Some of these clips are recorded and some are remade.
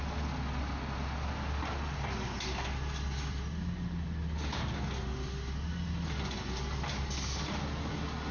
recorded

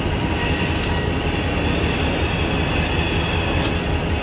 recorded